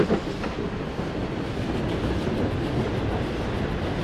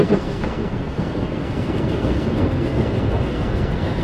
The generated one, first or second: second